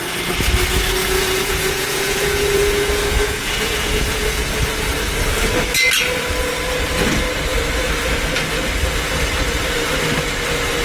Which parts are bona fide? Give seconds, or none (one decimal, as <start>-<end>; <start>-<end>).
0.0-1.0; 4.4-10.8